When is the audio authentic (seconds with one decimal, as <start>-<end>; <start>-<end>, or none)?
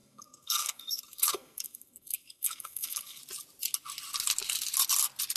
3.2-5.4